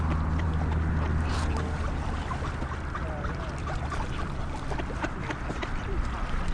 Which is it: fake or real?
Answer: fake